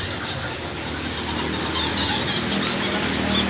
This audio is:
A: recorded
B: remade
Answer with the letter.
A